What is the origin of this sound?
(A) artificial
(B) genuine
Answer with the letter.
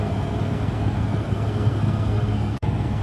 A